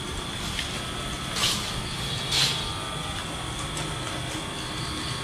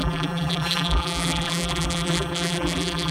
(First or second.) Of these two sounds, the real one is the first